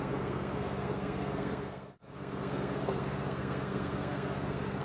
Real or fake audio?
fake